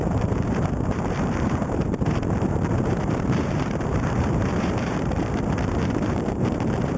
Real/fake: fake